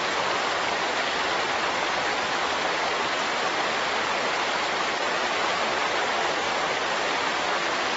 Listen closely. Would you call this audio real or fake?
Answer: real